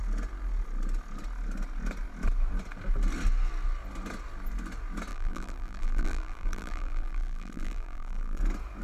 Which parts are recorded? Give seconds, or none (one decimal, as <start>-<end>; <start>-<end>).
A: 0.0-5.1; 8.4-8.8